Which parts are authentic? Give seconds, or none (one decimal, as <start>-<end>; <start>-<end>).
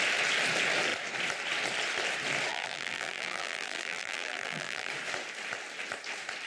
0.0-2.5; 4.9-6.5